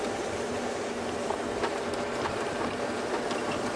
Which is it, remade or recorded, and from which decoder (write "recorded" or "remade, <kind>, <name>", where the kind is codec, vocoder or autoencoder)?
recorded